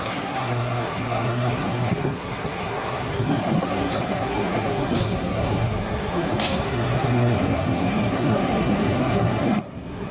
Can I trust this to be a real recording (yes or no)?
no